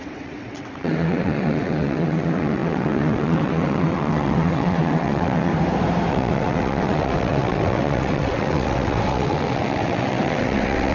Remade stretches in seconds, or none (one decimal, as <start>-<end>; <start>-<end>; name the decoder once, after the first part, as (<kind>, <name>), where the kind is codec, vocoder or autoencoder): 0.0-5.5 (vocoder, WaveNeXt); 6.1-10.9